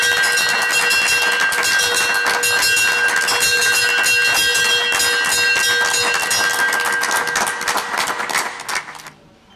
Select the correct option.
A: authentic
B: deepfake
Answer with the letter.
A